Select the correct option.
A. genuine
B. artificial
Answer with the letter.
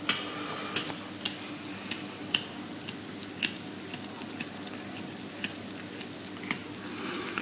A